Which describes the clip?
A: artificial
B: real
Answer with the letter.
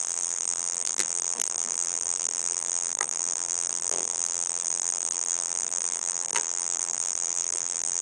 A